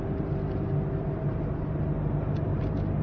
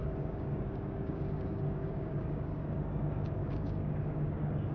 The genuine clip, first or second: first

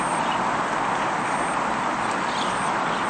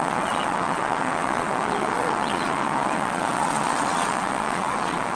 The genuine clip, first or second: first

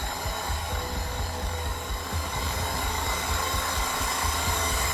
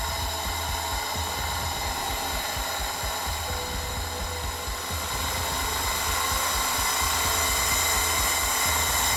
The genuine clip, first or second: second